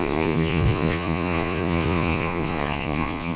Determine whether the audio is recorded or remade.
remade